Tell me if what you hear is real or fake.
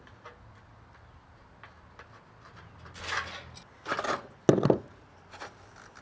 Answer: real